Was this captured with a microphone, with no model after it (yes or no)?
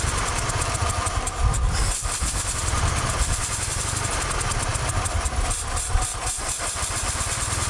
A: no